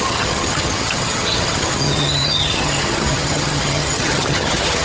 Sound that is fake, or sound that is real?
fake